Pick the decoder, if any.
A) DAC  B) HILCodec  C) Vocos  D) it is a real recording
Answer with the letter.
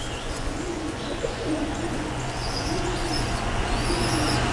C